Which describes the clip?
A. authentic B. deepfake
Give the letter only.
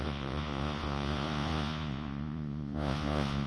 B